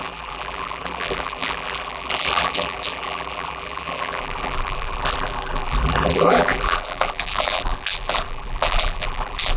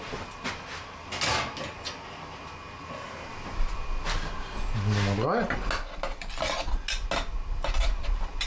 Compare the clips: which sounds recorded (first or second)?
second